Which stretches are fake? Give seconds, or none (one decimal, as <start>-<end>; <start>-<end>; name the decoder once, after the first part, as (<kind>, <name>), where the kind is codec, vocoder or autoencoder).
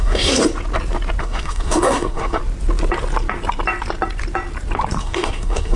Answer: 0.0-0.4 (codec, SNAC); 1.2-2.4; 5.0-5.8